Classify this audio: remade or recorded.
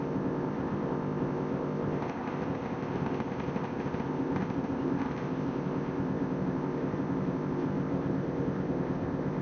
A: remade